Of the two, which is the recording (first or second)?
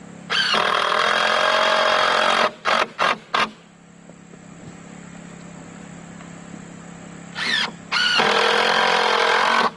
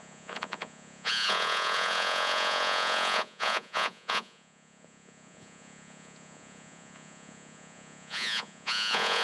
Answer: first